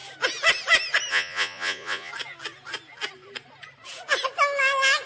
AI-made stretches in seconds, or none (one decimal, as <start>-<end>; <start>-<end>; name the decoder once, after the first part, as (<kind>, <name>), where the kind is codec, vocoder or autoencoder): 1.1-2.1 (vocoder, Vocos)